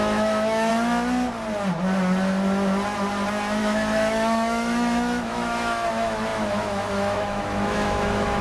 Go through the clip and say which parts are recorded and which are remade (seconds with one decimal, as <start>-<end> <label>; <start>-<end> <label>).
0.0-0.7 remade; 0.7-3.6 recorded; 3.6-8.4 remade